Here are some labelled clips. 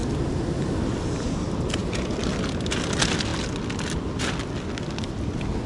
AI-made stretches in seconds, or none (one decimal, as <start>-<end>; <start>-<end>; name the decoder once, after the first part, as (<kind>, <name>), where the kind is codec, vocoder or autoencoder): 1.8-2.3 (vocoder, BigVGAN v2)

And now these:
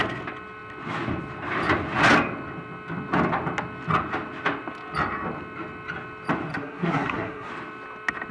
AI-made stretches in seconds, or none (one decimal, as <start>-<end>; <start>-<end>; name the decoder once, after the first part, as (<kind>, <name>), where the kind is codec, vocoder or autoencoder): 6.5-7.5 (codec, SNAC)

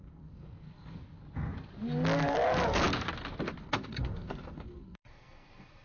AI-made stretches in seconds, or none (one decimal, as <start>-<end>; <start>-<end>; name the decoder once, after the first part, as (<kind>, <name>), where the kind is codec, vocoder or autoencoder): 0.0-1.2 (codec, SNAC); 3.6-5.8

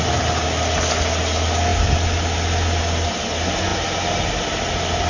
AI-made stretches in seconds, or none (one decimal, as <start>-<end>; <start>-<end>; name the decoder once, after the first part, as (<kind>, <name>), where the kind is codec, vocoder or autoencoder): none

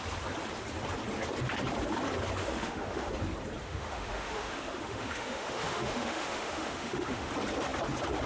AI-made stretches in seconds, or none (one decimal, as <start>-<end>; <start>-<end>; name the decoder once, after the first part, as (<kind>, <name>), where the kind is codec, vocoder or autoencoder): 2.4-3.1 (autoencoder, DAC-VAE); 3.6-7.3

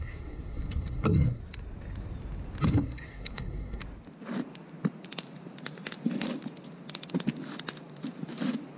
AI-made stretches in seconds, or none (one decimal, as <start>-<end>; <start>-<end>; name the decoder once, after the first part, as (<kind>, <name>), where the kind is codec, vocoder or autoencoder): 0.0-1.4 (codec, SNAC); 2.7-3.8